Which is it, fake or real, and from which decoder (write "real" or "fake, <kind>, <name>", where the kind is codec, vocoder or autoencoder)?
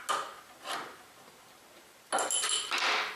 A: real